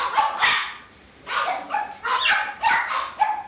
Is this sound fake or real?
real